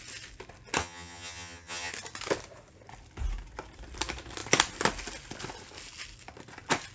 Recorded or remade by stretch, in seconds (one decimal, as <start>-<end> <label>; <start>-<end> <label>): 0.0-0.8 recorded; 0.8-1.9 remade; 1.9-6.9 recorded